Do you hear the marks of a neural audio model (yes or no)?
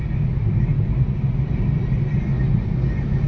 no